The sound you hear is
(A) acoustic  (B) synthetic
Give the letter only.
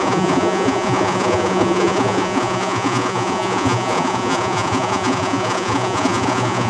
B